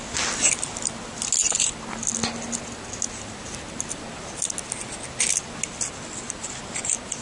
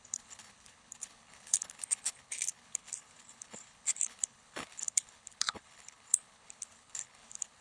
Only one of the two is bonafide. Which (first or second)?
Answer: first